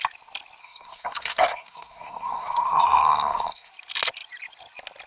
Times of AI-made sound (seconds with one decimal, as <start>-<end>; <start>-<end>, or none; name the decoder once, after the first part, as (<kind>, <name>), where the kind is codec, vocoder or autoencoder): 0.6-3.7 (codec, SNAC)